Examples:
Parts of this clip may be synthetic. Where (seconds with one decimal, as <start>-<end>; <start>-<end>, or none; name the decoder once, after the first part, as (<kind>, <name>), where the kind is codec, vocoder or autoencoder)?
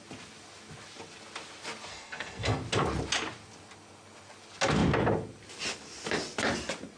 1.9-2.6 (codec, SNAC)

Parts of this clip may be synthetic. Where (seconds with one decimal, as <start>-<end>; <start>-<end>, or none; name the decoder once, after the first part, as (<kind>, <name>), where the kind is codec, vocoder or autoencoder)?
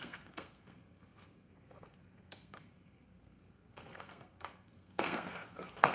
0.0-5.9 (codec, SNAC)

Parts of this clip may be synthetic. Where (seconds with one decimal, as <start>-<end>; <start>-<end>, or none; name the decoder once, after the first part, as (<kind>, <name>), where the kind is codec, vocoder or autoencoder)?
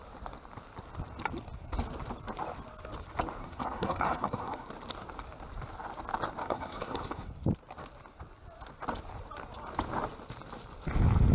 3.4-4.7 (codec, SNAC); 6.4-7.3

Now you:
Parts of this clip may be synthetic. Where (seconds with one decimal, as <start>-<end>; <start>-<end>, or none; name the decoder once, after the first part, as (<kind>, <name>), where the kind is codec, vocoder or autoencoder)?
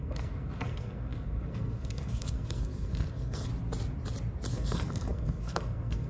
0.0-3.5 (codec, SNAC); 4.5-6.1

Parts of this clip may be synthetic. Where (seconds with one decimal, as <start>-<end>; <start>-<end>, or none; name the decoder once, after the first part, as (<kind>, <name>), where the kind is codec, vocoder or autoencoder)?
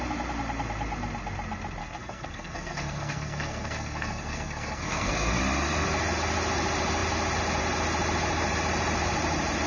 1.8-5.4 (codec, SNAC)